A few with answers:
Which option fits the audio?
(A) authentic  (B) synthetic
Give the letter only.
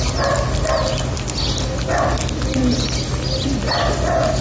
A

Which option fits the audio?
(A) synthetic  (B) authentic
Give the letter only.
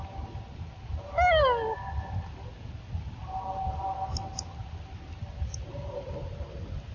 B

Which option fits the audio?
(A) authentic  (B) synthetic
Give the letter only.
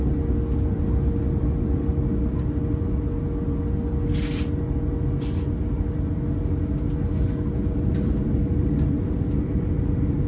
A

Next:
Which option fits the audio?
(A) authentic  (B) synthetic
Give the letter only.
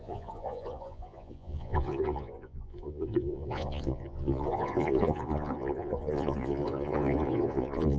B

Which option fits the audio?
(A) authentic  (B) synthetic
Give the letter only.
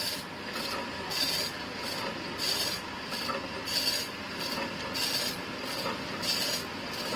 A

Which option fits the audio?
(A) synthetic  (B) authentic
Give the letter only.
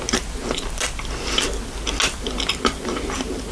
B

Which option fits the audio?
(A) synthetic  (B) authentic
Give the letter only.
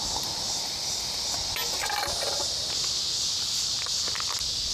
B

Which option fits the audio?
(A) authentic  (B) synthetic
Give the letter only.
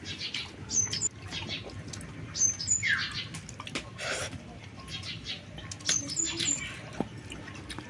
A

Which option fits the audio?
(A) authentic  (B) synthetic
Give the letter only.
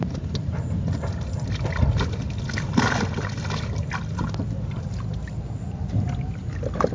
A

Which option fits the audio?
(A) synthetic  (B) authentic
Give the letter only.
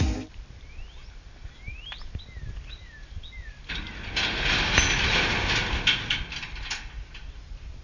B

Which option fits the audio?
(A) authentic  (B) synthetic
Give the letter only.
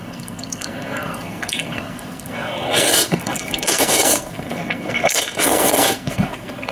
B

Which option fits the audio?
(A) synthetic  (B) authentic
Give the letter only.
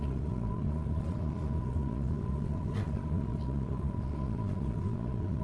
A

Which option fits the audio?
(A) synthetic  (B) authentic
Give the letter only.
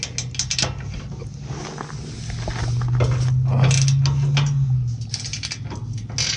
B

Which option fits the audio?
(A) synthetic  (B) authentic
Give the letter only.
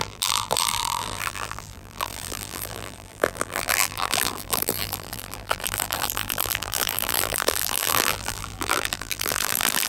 A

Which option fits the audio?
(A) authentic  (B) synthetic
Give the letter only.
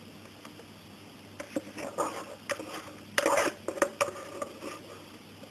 B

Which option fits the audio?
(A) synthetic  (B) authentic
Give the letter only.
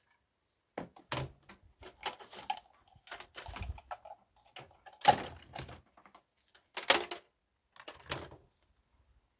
B